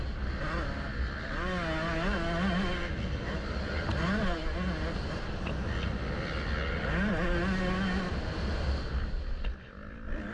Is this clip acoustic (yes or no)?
yes